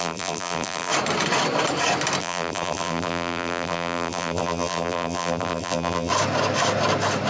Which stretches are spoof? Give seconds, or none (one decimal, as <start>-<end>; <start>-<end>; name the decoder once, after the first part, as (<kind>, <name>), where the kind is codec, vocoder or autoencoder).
0.0-0.9 (vocoder, BigVGAN v2); 2.2-6.1